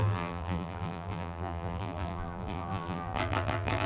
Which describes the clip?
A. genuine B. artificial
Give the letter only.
B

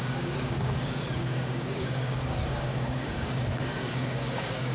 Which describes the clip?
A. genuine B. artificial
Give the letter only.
B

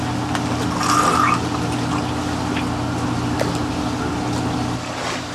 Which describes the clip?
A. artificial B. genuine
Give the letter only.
B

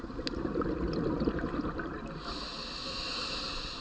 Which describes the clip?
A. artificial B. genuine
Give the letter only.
B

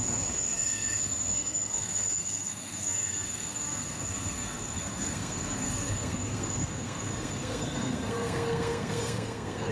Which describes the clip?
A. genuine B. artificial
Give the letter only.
B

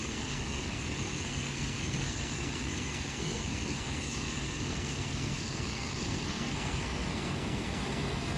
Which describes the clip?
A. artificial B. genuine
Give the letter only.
A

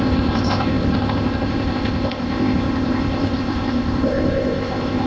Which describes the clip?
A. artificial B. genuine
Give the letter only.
A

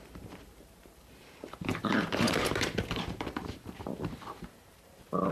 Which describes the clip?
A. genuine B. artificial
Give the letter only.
B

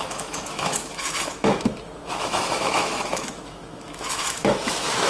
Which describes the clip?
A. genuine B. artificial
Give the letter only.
B